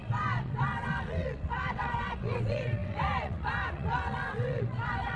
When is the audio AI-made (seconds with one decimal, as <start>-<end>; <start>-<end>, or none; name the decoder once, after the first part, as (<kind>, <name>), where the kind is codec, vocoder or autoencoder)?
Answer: 0.0-5.2 (vocoder, WaveNeXt)